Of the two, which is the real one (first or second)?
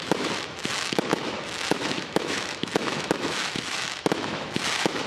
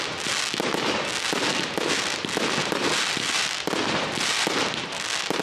second